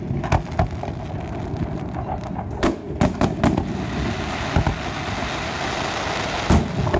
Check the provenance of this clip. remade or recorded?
recorded